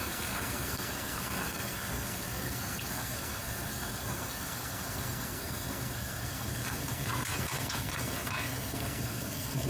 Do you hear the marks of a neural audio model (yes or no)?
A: yes